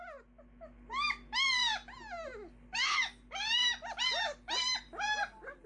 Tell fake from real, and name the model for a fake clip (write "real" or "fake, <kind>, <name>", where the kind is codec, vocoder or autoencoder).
real